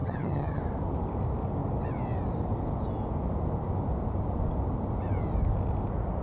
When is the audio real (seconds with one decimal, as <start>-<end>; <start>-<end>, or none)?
0.6-6.2